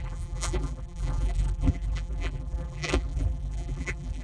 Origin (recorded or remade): remade